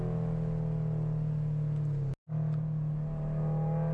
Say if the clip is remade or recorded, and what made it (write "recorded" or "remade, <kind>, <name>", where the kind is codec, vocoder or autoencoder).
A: recorded